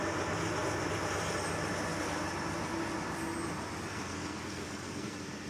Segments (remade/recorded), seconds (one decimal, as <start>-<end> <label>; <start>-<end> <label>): 0.0-3.9 recorded; 3.9-5.5 remade